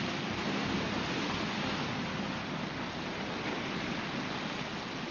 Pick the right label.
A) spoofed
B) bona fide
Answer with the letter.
B